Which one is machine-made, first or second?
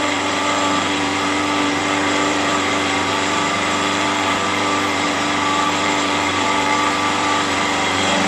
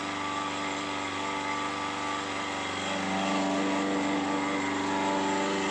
first